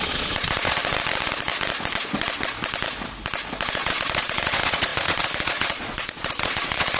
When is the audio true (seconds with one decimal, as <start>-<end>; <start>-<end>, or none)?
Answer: 0.8-3.7